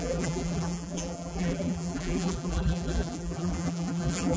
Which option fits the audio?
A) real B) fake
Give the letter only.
B